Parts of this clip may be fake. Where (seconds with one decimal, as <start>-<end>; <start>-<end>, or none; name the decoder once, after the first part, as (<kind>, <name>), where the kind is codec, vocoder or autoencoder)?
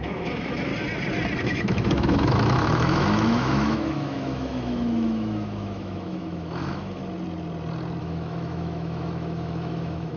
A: 0.0-0.7 (autoencoder, DAC-VAE); 1.4-7.0; 8.0-10.2